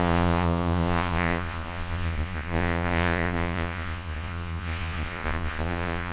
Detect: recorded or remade remade